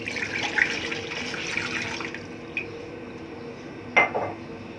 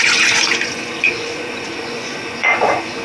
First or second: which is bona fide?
first